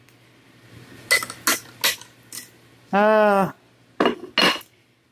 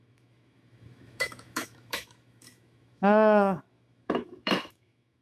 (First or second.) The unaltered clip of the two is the first